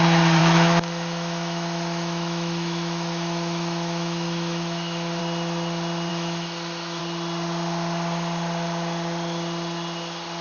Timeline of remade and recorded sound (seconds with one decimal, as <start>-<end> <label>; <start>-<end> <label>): 0.0-0.4 recorded; 0.4-5.2 remade; 5.2-6.1 recorded; 6.1-7.0 remade; 7.0-10.4 recorded